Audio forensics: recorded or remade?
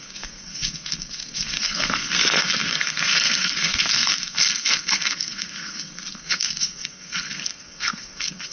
remade